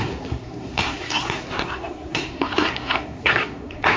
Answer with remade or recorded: remade